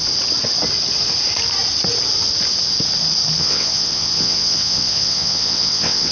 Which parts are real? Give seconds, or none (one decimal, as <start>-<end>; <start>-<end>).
0.0-3.4